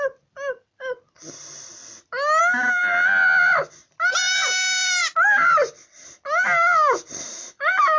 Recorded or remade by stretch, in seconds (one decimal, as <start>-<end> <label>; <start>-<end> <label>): 0.0-8.0 recorded